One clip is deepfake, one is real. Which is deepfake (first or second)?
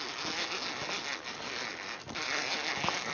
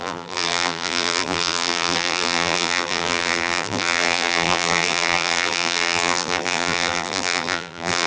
second